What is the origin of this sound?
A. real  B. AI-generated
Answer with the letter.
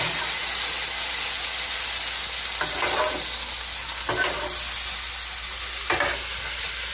A